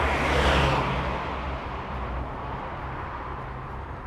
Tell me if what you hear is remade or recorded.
recorded